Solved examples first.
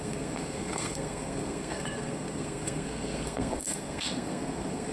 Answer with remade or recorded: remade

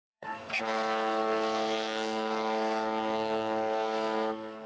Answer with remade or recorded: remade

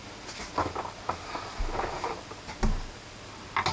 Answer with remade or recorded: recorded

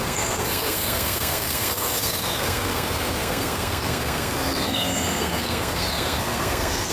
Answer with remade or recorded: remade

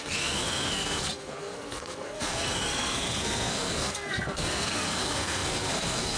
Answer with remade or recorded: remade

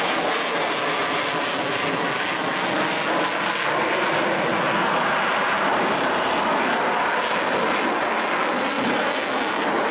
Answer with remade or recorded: recorded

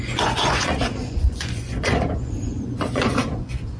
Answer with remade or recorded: remade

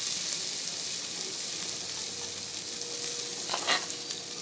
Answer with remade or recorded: recorded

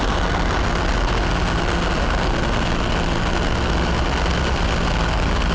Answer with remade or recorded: recorded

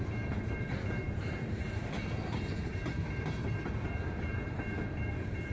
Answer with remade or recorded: remade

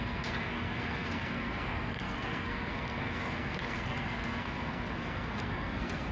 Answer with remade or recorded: remade